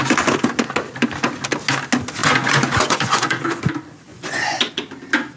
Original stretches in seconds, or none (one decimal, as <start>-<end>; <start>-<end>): 0.0-2.2; 3.6-4.1; 4.6-5.4